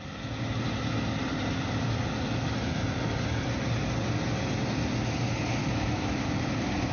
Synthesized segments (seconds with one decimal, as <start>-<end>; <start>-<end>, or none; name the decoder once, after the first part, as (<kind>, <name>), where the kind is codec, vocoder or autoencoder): 5.6-6.2 (autoencoder, DAC-VAE)